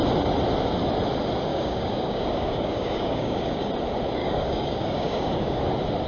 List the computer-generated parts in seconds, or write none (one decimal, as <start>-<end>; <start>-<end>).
1.5-3.7; 4.2-5.6